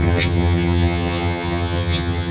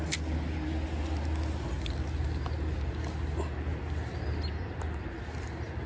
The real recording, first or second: second